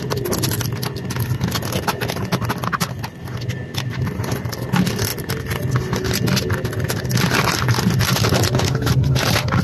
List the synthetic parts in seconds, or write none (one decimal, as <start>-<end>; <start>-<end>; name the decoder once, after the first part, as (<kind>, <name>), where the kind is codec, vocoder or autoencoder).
none